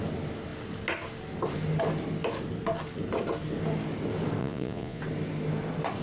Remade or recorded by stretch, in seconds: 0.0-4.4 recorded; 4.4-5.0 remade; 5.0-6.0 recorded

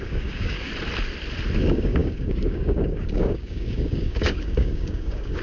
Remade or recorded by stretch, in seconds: 0.0-0.7 remade; 0.7-1.6 recorded; 1.6-5.4 remade

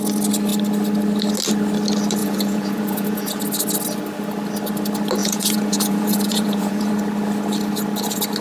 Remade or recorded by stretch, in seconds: 0.0-2.2 recorded; 2.2-3.4 remade; 3.4-5.2 recorded; 5.2-6.9 remade; 6.9-8.4 recorded

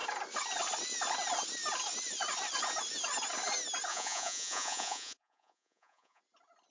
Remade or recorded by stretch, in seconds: 0.0-3.9 recorded; 3.9-6.2 remade; 6.2-6.7 recorded

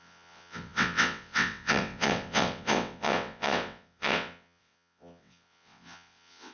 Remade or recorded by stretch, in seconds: 0.0-6.5 remade

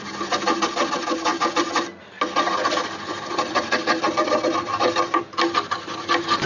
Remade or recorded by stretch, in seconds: 0.0-6.5 recorded

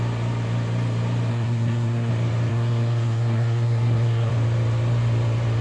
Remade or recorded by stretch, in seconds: 0.0-1.3 recorded; 1.3-2.1 remade; 2.1-2.5 recorded; 2.5-4.3 remade; 4.3-5.6 recorded